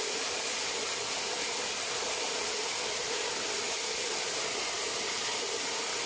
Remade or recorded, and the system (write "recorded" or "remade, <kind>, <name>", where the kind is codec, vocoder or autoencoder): recorded